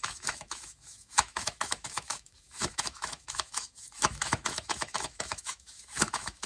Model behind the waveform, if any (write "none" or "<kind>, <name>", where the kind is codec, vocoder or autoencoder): autoencoder, DAC-VAE